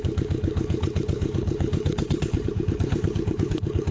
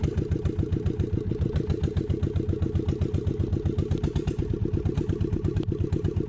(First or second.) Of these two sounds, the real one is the second